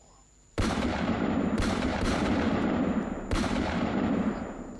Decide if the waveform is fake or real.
fake